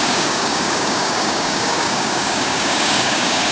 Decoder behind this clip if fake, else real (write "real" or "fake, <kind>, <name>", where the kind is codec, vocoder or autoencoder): fake, codec, DAC